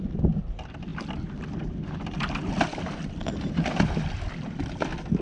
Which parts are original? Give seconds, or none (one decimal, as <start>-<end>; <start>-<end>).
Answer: 0.0-5.2